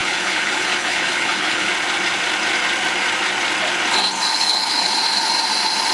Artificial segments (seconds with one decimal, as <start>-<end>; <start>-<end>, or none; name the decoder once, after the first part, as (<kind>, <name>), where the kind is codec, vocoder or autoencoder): 0.0-1.7 (codec, HILCodec); 4.3-4.9